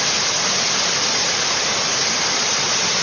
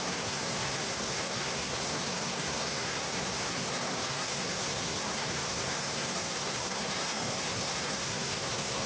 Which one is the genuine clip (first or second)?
first